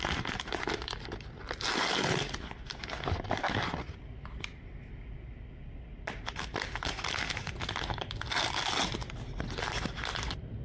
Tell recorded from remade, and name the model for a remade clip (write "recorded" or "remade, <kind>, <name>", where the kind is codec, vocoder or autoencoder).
recorded